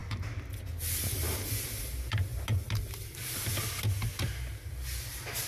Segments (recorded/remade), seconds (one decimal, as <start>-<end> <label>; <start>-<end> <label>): 0.0-5.5 recorded

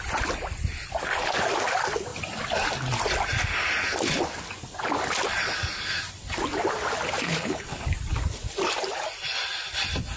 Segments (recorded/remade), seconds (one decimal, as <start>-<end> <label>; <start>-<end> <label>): 0.0-7.3 recorded; 7.3-7.8 remade; 7.8-10.2 recorded

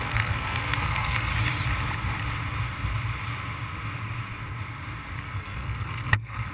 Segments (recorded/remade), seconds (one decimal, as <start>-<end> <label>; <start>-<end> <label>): 0.0-1.3 remade; 1.3-5.2 recorded; 5.2-6.5 remade

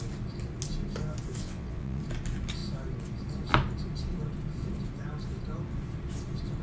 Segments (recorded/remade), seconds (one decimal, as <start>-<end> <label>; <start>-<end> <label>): 0.0-1.4 recorded; 1.4-2.0 remade; 2.0-6.6 recorded

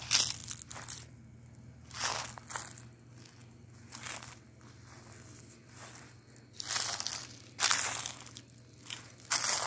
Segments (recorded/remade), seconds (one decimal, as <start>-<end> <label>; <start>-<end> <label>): 0.0-9.7 recorded

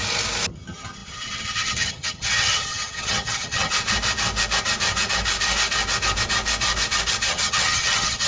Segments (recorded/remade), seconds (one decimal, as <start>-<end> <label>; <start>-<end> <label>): 0.0-0.5 recorded; 0.5-3.7 remade; 3.7-7.3 recorded; 7.3-8.3 remade